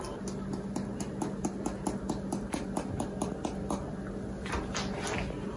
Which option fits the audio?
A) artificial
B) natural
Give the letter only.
B